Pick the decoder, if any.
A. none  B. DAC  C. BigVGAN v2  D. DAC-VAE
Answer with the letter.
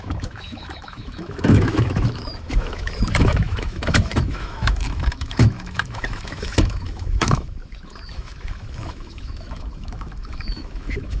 D